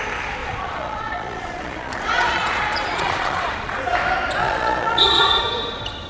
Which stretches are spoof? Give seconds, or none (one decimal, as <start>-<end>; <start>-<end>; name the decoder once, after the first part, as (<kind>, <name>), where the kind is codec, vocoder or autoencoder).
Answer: 0.4-3.8 (vocoder, Vocos); 4.4-5.4